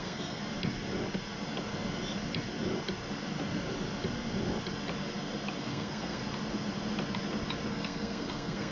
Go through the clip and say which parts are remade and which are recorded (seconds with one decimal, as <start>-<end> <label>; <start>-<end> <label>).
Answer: 0.0-0.4 remade; 0.4-5.6 recorded; 5.6-6.2 remade; 6.2-7.7 recorded; 7.7-8.7 remade